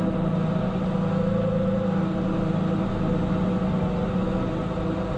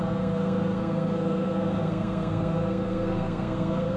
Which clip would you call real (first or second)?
first